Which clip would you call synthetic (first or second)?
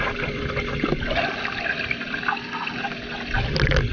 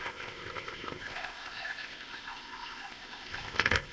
second